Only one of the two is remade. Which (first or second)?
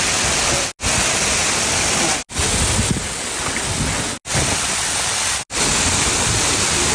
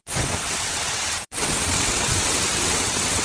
second